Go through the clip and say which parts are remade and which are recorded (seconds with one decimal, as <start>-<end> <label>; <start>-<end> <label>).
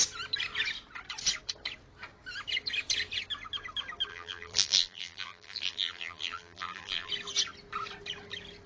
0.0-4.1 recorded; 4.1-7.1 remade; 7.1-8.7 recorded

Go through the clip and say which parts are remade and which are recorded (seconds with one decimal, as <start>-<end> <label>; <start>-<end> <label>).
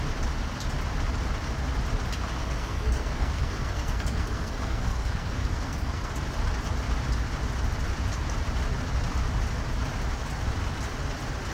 0.0-2.4 recorded; 2.4-6.1 remade; 6.1-11.5 recorded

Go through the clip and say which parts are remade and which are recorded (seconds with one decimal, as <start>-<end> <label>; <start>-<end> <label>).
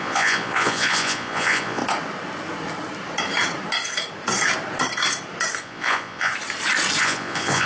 0.0-1.8 remade; 1.8-5.6 recorded; 5.6-6.3 remade; 6.3-7.0 recorded; 7.0-7.7 remade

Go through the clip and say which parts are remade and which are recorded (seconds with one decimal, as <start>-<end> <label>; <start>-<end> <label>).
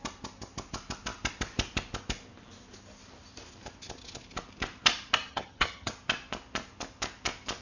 0.0-5.3 recorded; 5.3-5.9 remade; 5.9-7.6 recorded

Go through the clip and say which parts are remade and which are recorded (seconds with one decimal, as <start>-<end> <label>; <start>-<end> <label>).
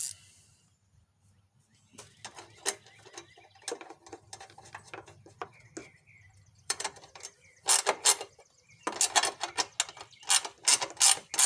0.0-5.8 recorded; 5.8-7.2 remade; 7.2-11.5 recorded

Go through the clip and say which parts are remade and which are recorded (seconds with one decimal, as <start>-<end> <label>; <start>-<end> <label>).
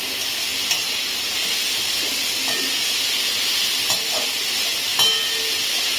0.0-6.0 recorded